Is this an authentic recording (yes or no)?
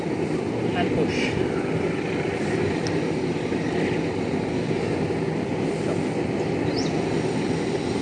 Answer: yes